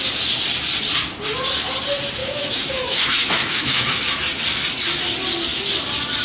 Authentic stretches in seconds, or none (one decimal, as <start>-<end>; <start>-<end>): 0.0-2.2; 4.0-6.2